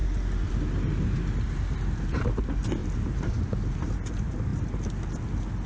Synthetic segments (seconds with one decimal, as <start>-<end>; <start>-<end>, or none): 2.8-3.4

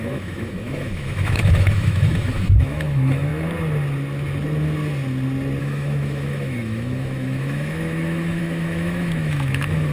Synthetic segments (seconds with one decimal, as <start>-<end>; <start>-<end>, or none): 0.0-3.3; 5.6-9.9

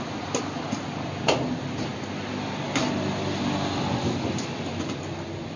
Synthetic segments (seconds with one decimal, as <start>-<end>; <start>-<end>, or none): none

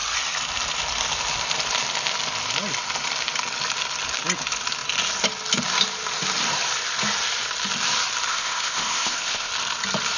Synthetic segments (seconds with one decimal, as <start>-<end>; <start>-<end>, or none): 8.3-9.5

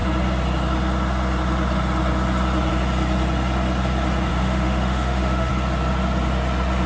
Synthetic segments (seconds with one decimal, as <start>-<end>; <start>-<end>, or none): 4.3-5.5